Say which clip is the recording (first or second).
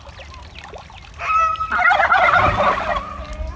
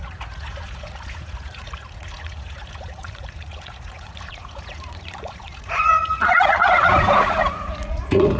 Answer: first